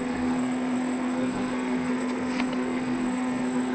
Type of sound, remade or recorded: remade